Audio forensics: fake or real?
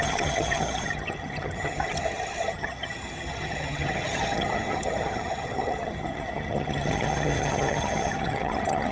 fake